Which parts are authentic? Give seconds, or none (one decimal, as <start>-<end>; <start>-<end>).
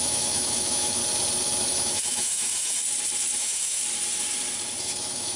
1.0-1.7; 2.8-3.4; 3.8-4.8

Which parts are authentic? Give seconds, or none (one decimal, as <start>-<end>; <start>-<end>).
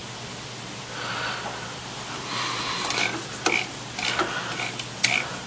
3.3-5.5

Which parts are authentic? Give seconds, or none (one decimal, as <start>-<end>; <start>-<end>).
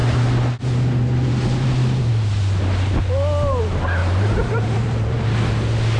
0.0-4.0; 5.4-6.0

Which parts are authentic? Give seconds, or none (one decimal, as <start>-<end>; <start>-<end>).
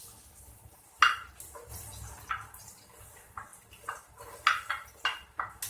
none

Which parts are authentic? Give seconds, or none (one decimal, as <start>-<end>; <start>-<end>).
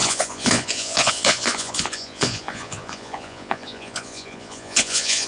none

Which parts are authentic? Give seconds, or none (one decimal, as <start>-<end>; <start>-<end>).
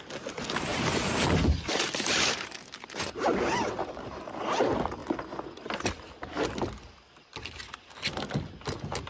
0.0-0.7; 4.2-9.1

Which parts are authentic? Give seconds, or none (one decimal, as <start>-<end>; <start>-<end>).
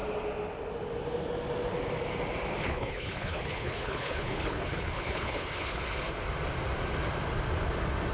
0.0-2.6; 5.8-8.1